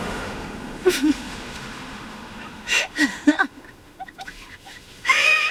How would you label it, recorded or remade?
remade